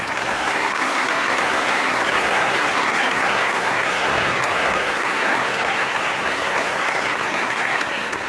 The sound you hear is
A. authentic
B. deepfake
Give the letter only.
B